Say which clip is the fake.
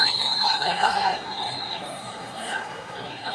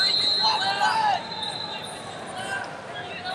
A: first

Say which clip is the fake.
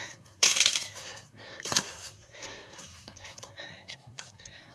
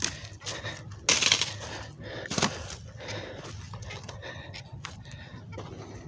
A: first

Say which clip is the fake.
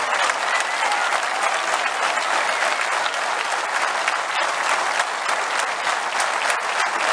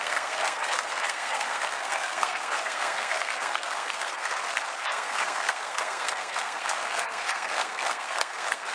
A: second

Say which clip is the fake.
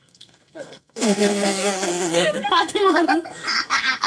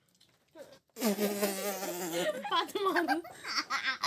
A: first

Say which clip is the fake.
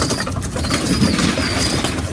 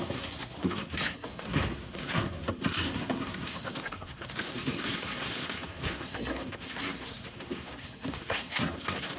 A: second